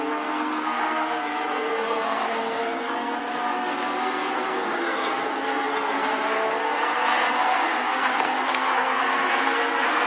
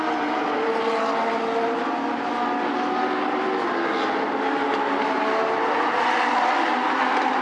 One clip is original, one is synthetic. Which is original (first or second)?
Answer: second